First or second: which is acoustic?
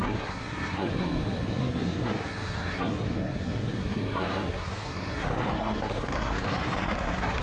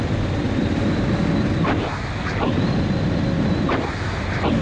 second